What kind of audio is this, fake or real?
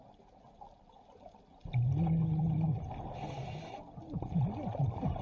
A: real